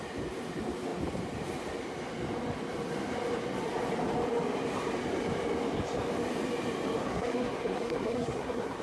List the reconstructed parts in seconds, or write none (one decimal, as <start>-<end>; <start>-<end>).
7.0-8.8